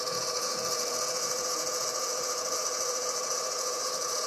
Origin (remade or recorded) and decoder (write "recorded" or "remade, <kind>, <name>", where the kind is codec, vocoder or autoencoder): remade, vocoder, Vocos